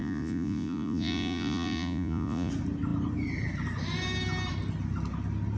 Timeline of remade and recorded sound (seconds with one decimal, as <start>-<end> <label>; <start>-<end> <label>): 0.0-2.5 remade; 2.5-5.6 recorded